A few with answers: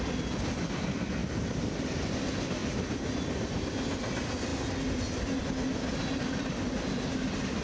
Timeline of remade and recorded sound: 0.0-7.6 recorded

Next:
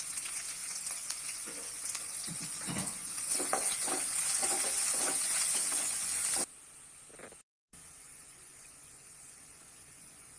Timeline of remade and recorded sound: 0.0-6.2 remade; 6.2-8.0 recorded; 8.0-10.4 remade